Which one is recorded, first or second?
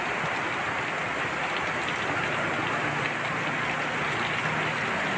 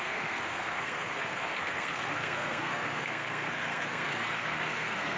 first